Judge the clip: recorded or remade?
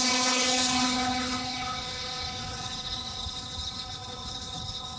remade